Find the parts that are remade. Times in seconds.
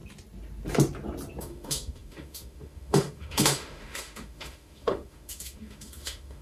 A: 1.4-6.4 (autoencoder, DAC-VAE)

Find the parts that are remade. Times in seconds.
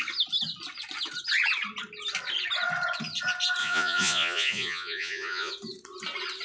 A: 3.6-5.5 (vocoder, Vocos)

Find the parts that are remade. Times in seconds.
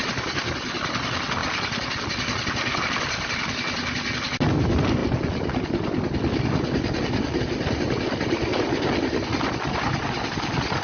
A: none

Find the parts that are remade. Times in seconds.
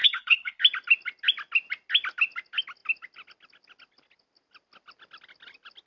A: 0.0-0.6 (codec, HILCodec)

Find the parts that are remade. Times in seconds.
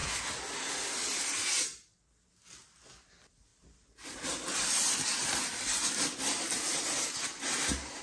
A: none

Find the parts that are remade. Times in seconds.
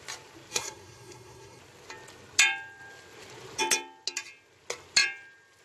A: 0.5-1.6 (codec, SNAC)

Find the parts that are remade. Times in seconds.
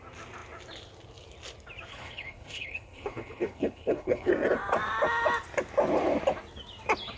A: 1.9-4.3 (codec, HILCodec)